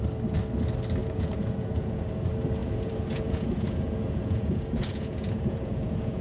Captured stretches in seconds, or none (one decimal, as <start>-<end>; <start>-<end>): 0.0-1.0; 2.0-2.6